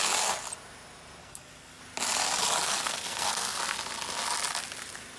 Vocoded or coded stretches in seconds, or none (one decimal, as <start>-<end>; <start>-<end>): 1.2-1.8; 2.6-3.6

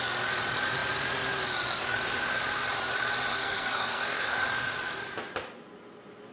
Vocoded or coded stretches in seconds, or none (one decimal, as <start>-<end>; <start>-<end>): 3.3-4.6

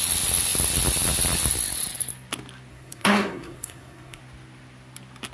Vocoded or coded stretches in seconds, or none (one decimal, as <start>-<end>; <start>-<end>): 2.7-4.2